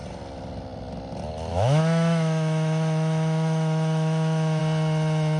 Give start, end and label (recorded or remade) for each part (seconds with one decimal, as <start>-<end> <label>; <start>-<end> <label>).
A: 0.0-1.5 recorded; 1.5-4.6 remade; 4.6-5.4 recorded